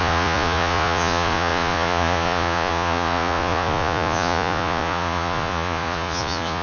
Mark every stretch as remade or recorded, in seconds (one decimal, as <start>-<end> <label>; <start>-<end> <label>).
0.0-6.6 remade